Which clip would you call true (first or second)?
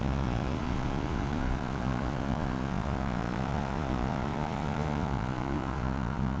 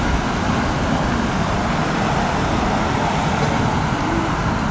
second